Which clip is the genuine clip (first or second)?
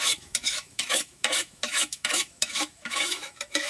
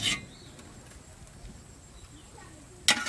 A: second